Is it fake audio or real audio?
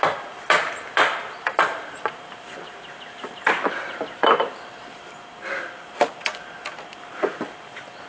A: real